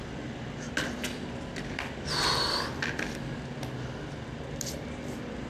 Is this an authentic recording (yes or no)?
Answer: yes